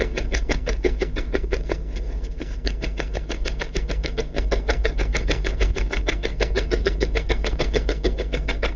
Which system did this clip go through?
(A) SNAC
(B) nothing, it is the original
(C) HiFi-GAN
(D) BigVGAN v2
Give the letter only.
A